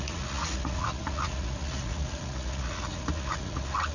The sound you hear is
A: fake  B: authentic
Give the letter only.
A